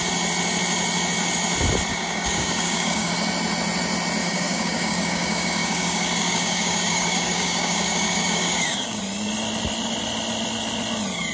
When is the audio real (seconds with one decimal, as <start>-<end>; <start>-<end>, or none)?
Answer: 0.0-1.9; 3.1-4.2; 9.0-11.3